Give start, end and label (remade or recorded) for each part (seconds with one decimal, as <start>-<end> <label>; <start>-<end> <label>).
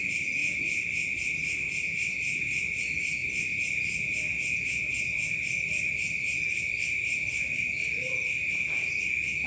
0.0-4.3 remade; 4.3-4.8 recorded; 4.8-9.5 remade